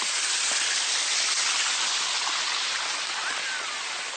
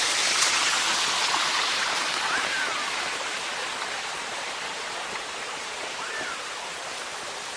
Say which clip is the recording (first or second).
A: first